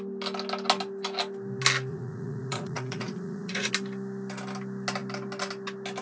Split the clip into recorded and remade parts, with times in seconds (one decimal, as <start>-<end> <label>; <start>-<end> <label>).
0.0-1.9 recorded; 1.9-3.7 remade; 3.7-6.0 recorded